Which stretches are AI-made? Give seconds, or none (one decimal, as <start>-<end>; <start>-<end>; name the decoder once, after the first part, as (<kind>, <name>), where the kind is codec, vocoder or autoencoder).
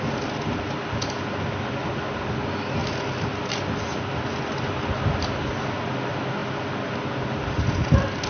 none